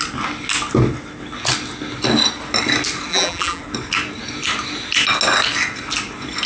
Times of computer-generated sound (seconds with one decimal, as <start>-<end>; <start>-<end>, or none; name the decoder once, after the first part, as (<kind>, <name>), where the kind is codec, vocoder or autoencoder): 3.1-3.6 (vocoder, BigVGAN v2)

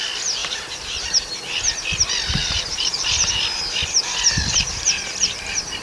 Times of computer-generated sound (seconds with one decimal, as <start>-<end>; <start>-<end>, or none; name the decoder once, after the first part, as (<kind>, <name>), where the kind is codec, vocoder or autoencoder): 0.4-1.4 (vocoder, BigVGAN v2); 2.4-5.3

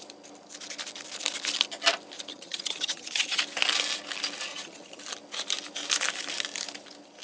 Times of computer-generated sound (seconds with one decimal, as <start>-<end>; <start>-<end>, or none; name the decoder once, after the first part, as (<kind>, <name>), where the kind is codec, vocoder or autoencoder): 2.3-3.4 (vocoder, HiFi-GAN); 4.5-5.0

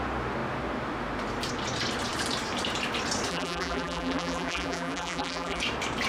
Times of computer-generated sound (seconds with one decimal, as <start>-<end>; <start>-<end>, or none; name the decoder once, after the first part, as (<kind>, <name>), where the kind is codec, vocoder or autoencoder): 3.3-5.6 (vocoder, BigVGAN v2)

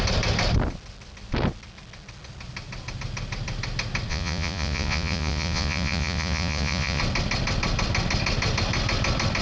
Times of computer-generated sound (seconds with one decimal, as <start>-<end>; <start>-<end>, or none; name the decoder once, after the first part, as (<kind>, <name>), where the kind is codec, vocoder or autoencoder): 4.1-7.0 (vocoder, Vocos)

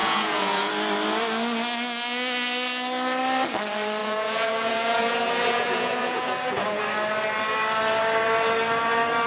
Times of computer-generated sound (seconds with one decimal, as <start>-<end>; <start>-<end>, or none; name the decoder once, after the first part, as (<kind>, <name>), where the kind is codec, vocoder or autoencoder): 0.0-0.7 (vocoder, Vocos); 4.0-6.8

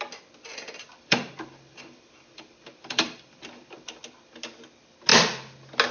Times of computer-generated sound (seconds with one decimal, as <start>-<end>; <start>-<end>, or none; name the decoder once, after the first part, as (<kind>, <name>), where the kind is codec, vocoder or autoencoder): 0.5-4.0 (vocoder, BigVGAN v2)